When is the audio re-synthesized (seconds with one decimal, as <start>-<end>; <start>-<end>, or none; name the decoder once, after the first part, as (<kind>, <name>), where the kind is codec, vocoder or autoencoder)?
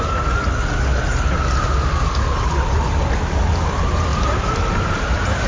4.1-5.5 (vocoder, BigVGAN v2)